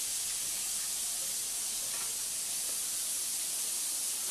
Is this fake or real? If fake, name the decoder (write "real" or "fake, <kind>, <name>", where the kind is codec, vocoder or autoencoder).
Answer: real